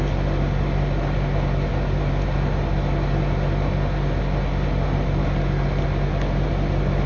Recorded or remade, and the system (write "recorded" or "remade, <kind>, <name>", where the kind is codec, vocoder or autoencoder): recorded